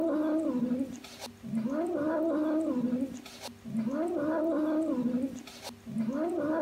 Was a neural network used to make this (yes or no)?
no